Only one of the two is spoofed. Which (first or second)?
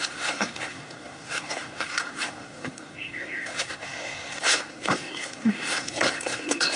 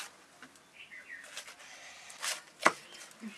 first